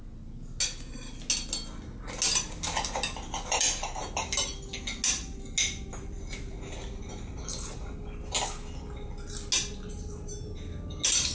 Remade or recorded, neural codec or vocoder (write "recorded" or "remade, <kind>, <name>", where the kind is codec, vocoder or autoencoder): recorded